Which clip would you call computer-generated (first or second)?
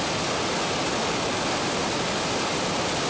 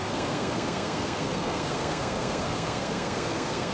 second